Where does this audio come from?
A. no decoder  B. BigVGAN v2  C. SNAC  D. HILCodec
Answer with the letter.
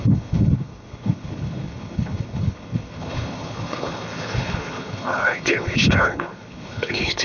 D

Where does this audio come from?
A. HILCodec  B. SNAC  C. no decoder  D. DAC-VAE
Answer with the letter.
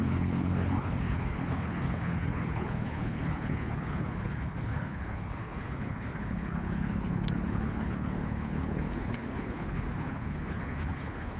A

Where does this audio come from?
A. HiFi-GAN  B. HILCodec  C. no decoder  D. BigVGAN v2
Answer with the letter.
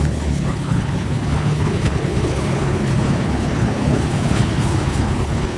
B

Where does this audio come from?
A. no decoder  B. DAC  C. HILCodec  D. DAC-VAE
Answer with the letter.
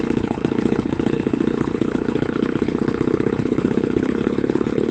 C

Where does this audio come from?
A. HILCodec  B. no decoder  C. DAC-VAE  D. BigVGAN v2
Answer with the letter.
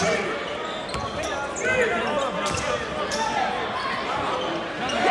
B